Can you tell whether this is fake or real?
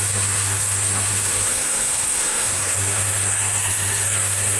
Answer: fake